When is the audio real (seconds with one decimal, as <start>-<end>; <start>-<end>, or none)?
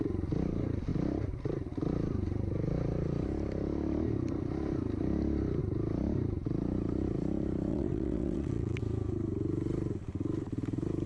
0.0-7.7; 8.8-11.1